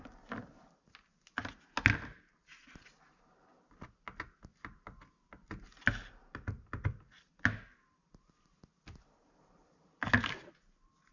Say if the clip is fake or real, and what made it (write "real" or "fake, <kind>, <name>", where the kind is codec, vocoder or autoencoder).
real